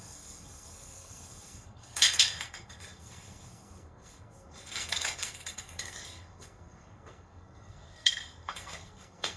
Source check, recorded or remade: remade